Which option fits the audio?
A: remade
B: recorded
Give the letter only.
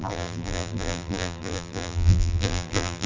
A